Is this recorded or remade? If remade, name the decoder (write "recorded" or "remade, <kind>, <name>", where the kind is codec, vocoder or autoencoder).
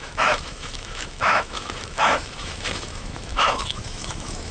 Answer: remade, autoencoder, DAC-VAE